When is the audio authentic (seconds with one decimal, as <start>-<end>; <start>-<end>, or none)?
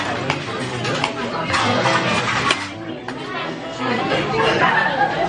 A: 0.0-1.6; 2.2-3.4; 4.1-5.3